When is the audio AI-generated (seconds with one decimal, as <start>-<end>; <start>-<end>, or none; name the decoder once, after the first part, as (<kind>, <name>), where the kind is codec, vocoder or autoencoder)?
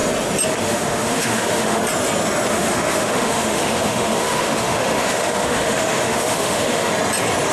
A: 0.6-1.8 (autoencoder, DAC-VAE); 2.5-6.9